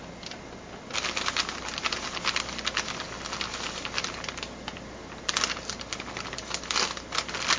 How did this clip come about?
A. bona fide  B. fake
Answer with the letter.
A